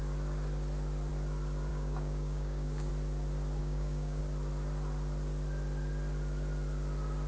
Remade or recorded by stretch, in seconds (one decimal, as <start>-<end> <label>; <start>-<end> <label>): 0.0-1.7 recorded; 1.7-2.9 remade; 2.9-3.6 recorded; 3.6-4.2 remade; 4.2-7.3 recorded